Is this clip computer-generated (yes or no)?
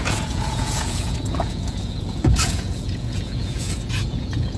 yes